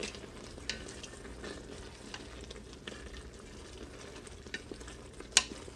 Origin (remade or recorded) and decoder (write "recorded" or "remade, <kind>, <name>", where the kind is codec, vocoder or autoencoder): recorded